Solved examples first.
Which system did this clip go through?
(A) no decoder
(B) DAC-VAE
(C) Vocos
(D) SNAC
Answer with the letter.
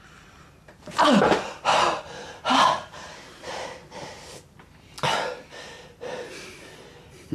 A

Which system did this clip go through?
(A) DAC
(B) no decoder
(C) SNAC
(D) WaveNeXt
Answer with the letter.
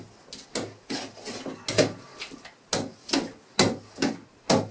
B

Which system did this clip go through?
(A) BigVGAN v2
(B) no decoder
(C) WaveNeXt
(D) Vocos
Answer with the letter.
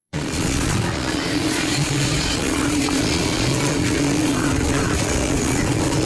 D